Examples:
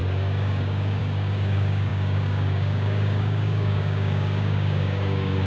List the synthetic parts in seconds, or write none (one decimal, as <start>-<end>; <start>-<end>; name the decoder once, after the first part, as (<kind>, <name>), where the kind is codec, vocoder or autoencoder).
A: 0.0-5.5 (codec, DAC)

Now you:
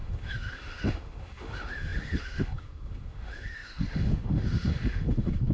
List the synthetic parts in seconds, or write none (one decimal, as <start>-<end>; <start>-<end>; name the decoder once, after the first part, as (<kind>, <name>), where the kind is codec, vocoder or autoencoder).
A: 0.0-5.5 (autoencoder, DAC-VAE)

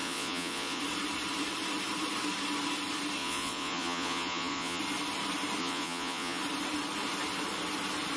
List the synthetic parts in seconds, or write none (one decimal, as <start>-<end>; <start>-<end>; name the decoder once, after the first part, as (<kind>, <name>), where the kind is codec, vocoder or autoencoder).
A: 0.0-0.8 (vocoder, Vocos); 3.2-4.8; 5.6-6.4

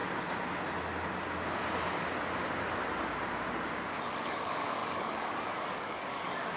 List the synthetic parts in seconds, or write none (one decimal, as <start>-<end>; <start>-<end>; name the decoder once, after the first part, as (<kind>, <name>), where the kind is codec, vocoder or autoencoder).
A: 4.0-6.6 (codec, DAC)